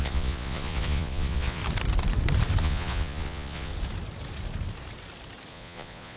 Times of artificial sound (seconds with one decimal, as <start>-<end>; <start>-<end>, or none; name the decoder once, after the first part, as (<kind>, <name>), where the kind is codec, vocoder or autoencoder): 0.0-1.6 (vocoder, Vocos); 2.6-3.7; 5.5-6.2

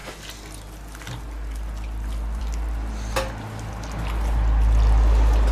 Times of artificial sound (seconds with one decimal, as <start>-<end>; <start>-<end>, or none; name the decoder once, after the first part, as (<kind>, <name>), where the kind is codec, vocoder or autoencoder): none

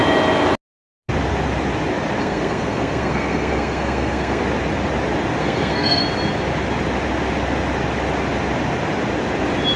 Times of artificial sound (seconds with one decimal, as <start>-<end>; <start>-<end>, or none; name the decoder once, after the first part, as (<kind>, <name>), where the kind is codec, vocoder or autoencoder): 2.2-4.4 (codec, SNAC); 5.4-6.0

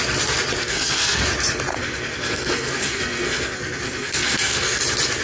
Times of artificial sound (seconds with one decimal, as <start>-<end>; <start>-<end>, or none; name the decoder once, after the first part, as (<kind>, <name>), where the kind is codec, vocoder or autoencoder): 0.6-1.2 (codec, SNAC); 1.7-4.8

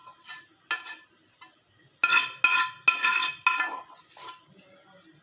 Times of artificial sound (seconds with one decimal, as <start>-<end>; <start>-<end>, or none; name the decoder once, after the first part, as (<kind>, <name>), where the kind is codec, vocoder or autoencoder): 0.0-0.6 (vocoder, BigVGAN v2)